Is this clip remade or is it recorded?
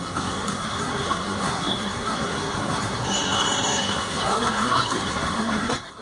remade